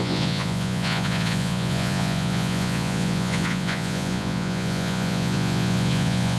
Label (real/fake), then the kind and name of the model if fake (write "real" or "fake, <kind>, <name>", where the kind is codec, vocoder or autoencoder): fake, vocoder, Vocos